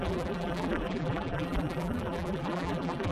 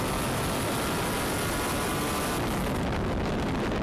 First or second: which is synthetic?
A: first